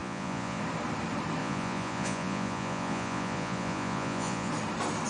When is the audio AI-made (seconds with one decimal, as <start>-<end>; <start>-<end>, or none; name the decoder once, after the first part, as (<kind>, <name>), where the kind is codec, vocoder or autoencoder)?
0.0-0.6 (vocoder, Vocos); 1.4-4.5